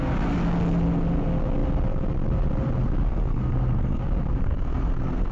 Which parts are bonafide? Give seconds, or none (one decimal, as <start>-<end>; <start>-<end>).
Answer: 0.0-3.1; 4.0-4.4